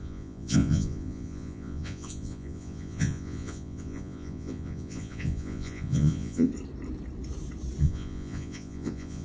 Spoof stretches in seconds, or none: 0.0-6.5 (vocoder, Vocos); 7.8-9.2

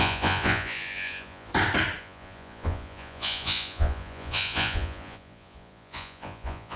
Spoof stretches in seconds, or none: 0.0-1.5 (vocoder, Vocos); 2.0-6.8

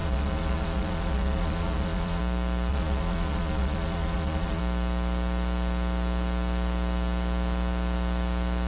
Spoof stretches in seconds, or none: 0.0-2.2 (vocoder, Vocos); 2.7-4.6

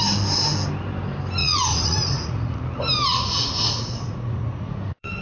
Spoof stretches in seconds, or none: 1.4-2.6 (vocoder, Vocos); 3.1-5.2

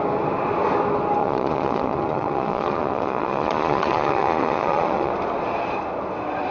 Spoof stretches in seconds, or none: 1.2-5.1 (vocoder, Vocos)

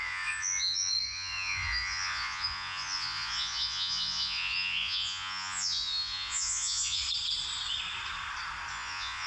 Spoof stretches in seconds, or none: 0.0-7.0 (vocoder, Vocos); 8.7-9.3

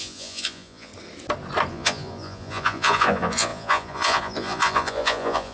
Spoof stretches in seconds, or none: 0.0-0.9 (vocoder, Vocos); 1.7-5.5